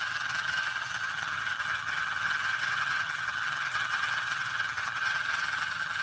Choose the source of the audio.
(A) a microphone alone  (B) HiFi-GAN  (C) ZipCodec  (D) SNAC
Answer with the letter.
B